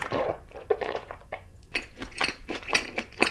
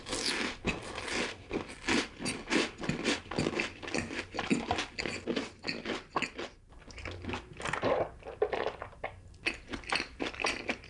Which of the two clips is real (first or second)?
second